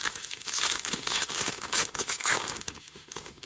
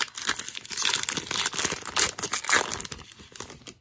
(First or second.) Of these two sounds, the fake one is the first